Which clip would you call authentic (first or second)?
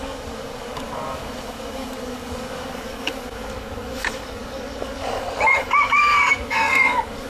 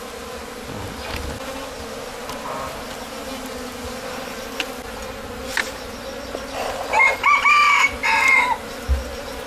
second